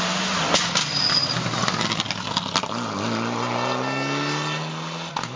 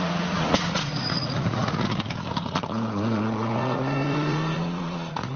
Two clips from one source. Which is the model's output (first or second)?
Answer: second